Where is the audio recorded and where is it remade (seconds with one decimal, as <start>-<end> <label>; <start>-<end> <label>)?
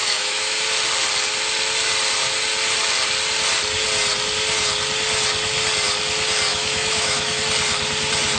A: 0.0-0.6 remade; 0.6-6.5 recorded; 6.5-7.4 remade; 7.4-8.4 recorded